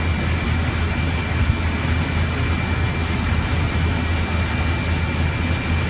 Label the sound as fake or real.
real